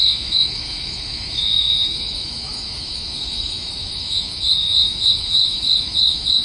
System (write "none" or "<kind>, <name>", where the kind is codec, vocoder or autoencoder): autoencoder, DAC-VAE